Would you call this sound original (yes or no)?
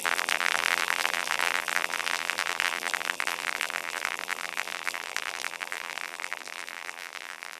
no